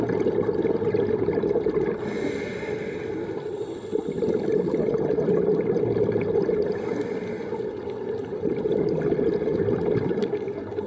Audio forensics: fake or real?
real